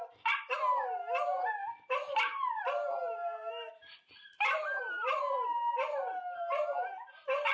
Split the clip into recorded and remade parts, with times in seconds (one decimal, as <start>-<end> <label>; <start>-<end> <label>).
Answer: 0.0-3.0 recorded; 3.0-7.5 remade